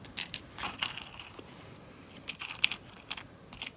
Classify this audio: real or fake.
real